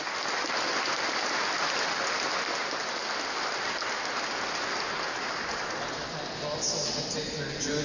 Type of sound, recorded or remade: recorded